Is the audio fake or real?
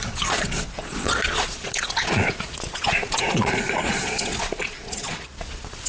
fake